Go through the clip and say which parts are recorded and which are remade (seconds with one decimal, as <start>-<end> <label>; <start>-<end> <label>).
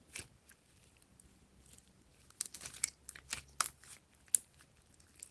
0.0-5.3 recorded